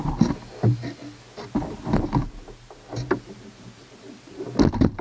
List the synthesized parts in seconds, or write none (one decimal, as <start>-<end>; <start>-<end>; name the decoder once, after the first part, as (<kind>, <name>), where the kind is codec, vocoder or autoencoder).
none